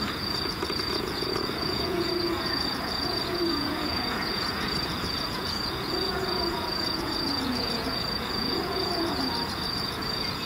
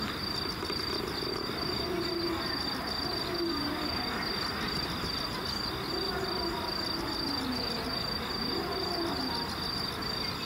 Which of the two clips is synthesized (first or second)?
first